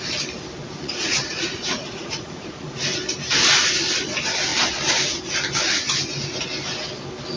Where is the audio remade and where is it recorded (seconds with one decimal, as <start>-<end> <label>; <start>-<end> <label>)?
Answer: 0.0-0.6 recorded; 0.6-2.8 remade; 2.8-7.4 recorded